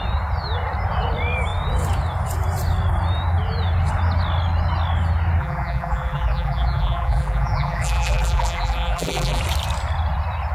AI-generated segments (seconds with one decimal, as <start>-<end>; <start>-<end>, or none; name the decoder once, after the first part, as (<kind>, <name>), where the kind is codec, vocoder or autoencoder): 5.4-9.4 (vocoder, BigVGAN v2)